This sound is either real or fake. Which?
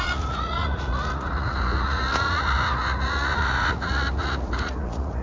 fake